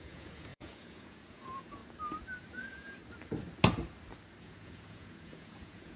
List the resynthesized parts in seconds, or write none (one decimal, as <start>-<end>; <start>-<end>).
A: 0.0-1.8; 2.5-3.0; 4.4-6.0